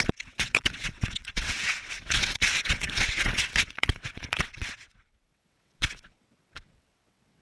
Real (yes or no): no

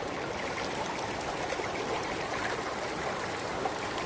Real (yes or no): yes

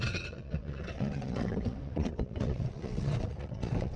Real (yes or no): no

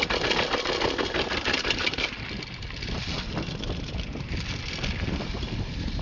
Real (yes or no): yes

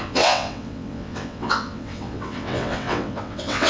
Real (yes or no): no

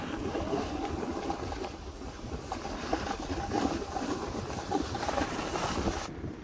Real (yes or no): yes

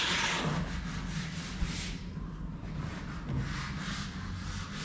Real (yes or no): yes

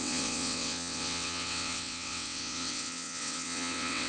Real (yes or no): no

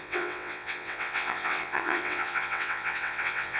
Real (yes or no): no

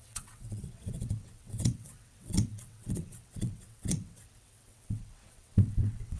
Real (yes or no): no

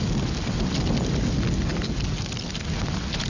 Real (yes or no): yes